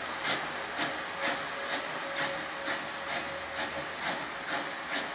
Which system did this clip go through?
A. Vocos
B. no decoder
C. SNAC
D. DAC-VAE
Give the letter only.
B